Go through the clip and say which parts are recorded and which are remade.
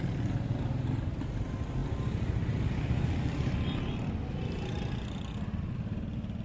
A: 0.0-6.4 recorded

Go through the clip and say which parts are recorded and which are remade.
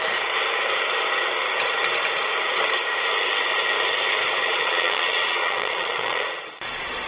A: 0.0-4.4 recorded; 4.4-7.1 remade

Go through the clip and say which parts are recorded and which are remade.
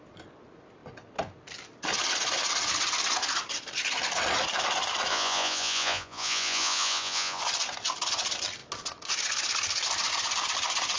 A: 0.0-5.1 recorded; 5.1-7.4 remade; 7.4-11.0 recorded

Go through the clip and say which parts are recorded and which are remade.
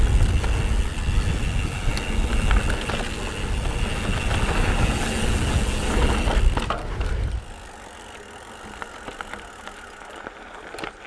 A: 0.0-11.1 recorded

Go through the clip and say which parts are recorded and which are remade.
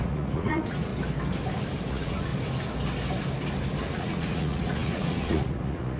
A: 0.0-0.9 remade; 0.9-1.9 recorded; 1.9-2.3 remade; 2.3-3.9 recorded; 3.9-6.0 remade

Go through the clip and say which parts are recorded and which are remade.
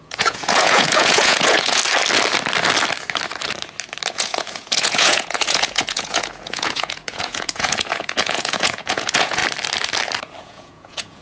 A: 0.0-1.8 remade; 1.8-4.1 recorded; 4.1-9.4 remade; 9.4-10.4 recorded; 10.4-11.2 remade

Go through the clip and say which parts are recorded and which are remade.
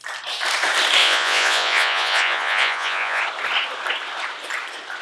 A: 0.0-1.0 recorded; 1.0-3.2 remade; 3.2-5.0 recorded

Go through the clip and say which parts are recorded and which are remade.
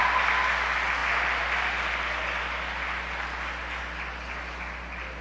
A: 0.0-5.2 recorded